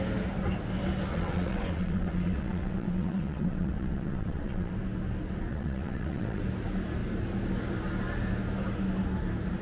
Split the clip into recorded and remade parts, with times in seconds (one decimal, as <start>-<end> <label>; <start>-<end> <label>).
0.0-1.1 recorded; 1.1-4.7 remade; 4.7-5.5 recorded; 5.5-6.4 remade; 6.4-9.6 recorded